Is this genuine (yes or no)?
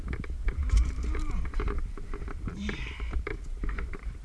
no